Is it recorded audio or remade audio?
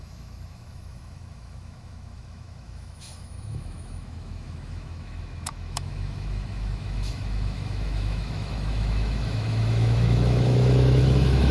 remade